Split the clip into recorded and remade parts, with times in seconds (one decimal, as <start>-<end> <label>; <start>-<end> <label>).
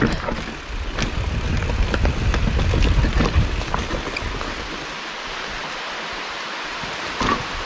0.0-7.7 recorded